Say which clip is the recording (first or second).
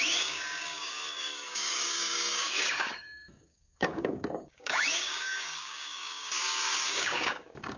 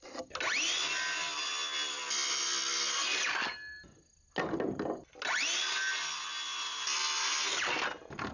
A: second